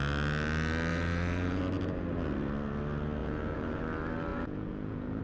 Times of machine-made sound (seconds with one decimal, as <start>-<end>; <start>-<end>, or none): 0.9-1.6; 3.2-3.8; 4.3-5.2